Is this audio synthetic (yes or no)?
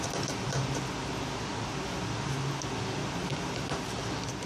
no